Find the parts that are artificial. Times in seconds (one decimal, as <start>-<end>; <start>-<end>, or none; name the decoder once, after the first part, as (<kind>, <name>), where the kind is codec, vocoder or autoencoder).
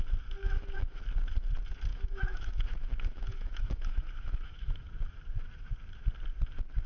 0.4-1.0 (autoencoder, DAC-VAE); 1.9-4.9